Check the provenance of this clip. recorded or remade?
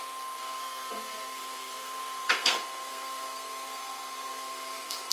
remade